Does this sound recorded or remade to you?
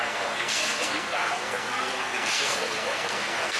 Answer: remade